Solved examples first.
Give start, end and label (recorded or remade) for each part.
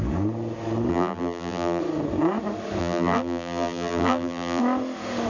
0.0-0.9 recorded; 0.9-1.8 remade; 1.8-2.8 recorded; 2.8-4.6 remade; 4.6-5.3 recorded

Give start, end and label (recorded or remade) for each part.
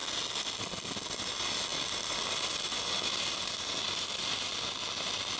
0.0-1.7 recorded; 1.7-4.7 remade; 4.7-5.4 recorded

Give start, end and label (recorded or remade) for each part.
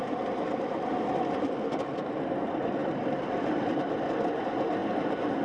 0.0-2.8 recorded; 2.8-4.1 remade; 4.1-5.4 recorded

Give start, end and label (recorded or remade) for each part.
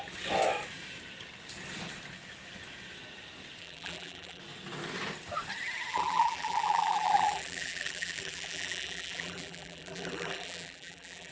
0.0-3.6 recorded; 3.6-4.4 remade; 4.4-5.9 recorded; 5.9-11.3 remade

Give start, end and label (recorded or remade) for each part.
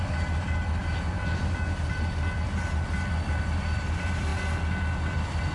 0.0-4.3 remade; 4.3-5.1 recorded; 5.1-5.5 remade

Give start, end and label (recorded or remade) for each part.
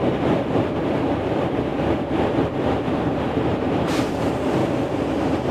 0.0-1.7 remade; 1.7-2.3 recorded; 2.3-4.6 remade; 4.6-5.5 recorded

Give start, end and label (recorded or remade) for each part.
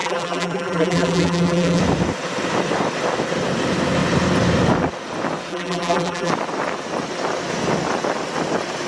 0.0-1.8 remade; 1.8-5.5 recorded; 5.5-6.3 remade; 6.3-8.9 recorded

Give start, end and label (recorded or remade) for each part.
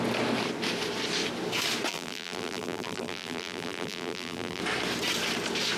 0.0-1.9 recorded; 1.9-4.6 remade; 4.6-5.8 recorded